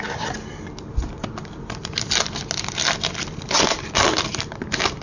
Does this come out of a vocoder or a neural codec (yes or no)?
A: no